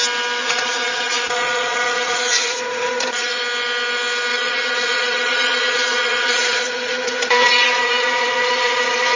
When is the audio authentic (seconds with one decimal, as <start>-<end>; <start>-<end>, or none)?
0.0-0.4; 3.4-4.3